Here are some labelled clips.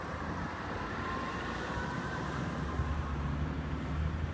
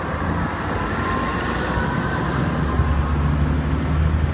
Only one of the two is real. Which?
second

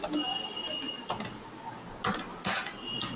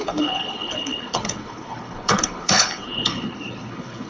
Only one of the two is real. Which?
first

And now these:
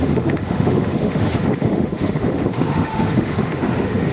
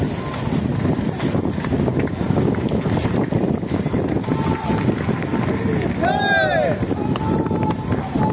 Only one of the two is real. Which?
second